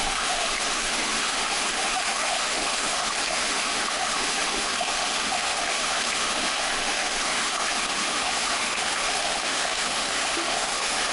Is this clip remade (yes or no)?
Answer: yes